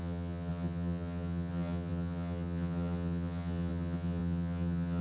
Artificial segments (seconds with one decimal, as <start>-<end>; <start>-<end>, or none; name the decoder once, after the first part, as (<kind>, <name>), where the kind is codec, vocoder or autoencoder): 0.0-5.0 (vocoder, HiFi-GAN)

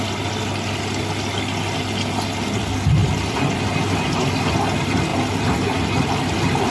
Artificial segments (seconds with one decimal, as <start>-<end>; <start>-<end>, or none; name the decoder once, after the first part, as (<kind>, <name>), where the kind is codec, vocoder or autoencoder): 3.0-3.6 (vocoder, BigVGAN v2)

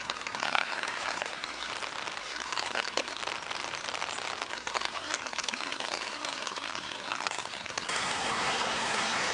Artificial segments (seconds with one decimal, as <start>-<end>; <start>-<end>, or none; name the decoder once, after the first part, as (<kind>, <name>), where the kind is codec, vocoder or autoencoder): 0.0-1.7 (codec, SNAC); 2.2-3.2; 4.5-9.3

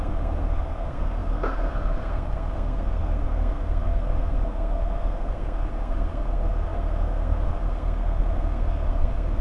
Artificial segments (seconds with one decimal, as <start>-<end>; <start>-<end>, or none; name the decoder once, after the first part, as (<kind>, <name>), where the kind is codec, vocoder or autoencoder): 0.0-9.4 (codec, SNAC)

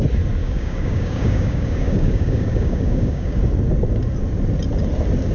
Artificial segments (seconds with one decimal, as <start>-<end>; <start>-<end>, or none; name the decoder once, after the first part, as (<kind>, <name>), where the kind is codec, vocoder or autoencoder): 0.4-3.4 (codec, DAC)